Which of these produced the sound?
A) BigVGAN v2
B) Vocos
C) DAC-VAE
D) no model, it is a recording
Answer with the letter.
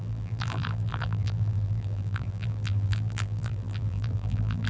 A